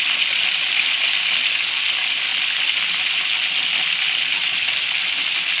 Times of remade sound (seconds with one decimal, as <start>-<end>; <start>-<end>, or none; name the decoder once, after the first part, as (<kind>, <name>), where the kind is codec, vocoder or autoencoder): none